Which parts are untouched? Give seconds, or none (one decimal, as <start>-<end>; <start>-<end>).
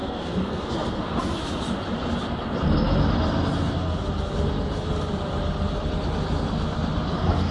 1.2-7.5